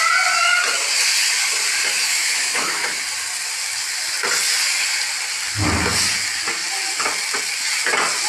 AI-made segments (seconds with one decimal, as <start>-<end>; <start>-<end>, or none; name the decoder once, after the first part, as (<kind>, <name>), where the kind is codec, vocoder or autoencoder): 1.9-3.0 (autoencoder, DAC-VAE)